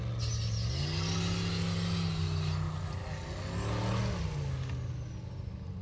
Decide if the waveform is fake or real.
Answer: real